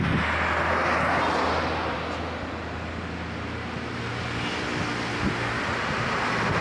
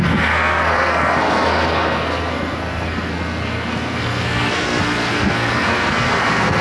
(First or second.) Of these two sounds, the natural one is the first